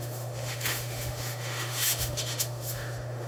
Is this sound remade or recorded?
remade